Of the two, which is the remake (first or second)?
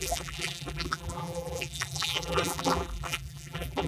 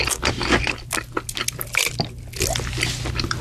first